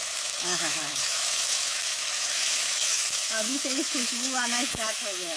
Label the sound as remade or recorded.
remade